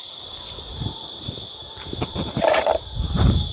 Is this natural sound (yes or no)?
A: no